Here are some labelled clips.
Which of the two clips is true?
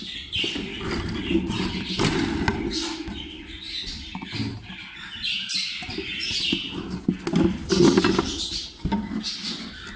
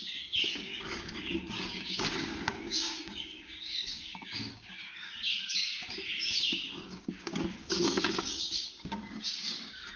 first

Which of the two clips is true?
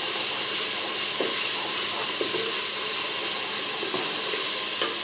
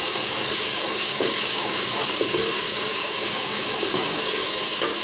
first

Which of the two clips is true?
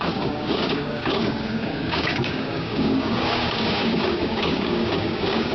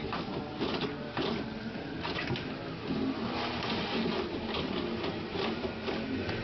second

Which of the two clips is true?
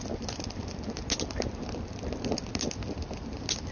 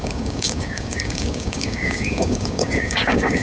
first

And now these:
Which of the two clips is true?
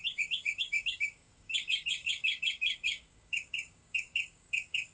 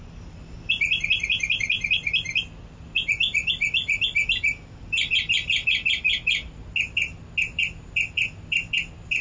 second